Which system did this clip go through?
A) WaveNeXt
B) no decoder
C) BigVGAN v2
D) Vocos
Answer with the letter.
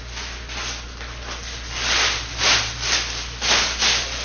B